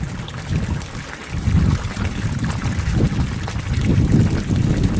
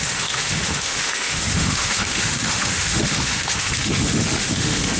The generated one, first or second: second